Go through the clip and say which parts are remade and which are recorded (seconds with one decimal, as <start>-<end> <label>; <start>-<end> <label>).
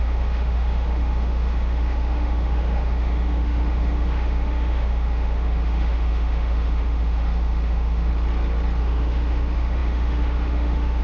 0.0-8.1 remade; 8.1-8.8 recorded; 8.8-11.0 remade